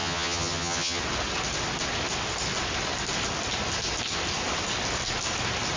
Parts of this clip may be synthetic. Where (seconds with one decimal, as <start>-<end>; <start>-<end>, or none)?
0.0-1.0